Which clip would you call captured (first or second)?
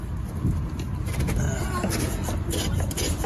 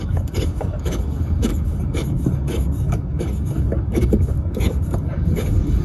first